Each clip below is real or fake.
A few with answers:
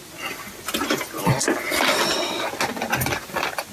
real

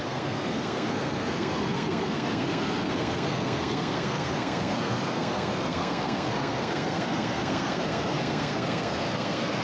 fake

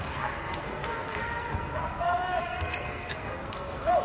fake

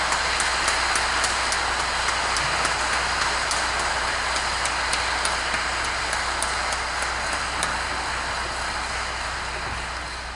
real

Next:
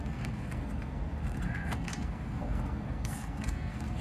fake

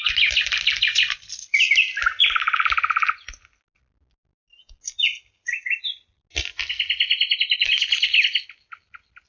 real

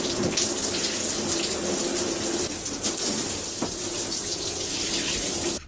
real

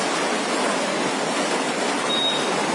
real